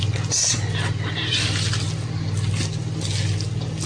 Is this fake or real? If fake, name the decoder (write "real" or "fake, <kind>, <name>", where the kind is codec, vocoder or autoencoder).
real